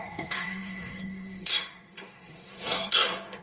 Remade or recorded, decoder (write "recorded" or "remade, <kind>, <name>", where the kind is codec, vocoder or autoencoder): remade, codec, SNAC